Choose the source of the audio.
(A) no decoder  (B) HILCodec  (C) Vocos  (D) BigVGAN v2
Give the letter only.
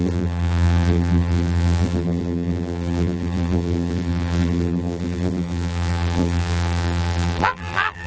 D